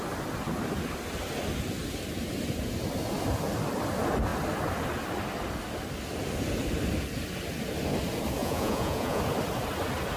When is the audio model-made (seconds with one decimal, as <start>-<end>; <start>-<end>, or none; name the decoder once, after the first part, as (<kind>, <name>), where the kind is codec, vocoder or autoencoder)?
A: 8.4-9.2 (vocoder, Vocos)